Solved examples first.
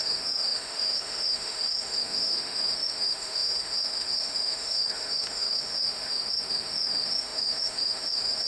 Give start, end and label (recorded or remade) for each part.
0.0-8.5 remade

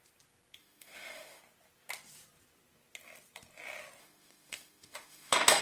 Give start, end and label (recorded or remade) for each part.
0.0-0.6 recorded; 0.6-1.4 remade; 1.4-4.0 recorded; 4.0-5.6 remade

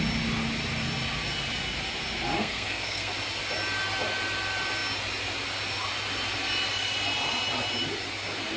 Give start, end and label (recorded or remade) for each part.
0.0-2.4 recorded; 2.4-3.1 remade; 3.1-8.6 recorded

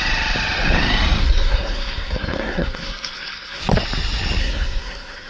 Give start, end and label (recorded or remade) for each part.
0.0-1.2 recorded; 1.2-3.6 remade; 3.6-4.4 recorded; 4.4-5.3 remade